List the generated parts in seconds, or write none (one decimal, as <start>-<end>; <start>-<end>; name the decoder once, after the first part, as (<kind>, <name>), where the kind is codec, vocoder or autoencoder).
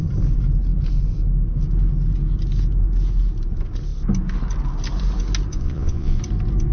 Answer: 5.5-6.2 (vocoder, Vocos)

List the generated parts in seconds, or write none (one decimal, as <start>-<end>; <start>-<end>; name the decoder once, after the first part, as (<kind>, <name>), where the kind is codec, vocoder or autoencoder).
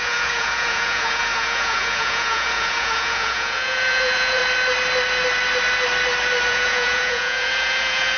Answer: 0.0-4.4 (vocoder, Vocos); 6.5-8.2